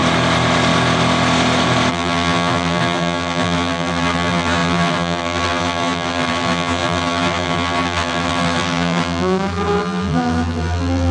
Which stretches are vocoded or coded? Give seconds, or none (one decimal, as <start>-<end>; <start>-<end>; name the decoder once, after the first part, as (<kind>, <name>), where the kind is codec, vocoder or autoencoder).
1.9-11.1 (vocoder, BigVGAN v2)